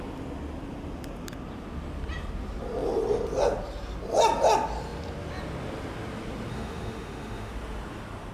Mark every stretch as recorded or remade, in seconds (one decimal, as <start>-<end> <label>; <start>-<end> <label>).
0.0-6.5 recorded; 6.5-7.5 remade; 7.5-8.3 recorded